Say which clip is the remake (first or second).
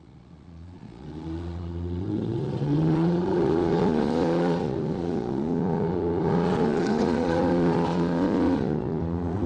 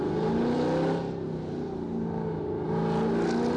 first